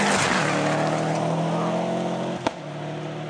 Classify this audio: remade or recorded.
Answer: recorded